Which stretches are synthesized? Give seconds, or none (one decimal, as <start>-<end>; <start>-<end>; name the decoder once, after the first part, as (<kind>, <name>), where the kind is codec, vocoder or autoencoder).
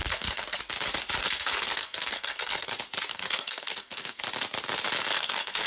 0.0-0.6 (codec, SNAC); 1.2-2.7; 3.1-4.2; 5.1-5.7